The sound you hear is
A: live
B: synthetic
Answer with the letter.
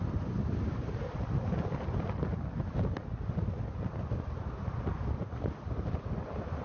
A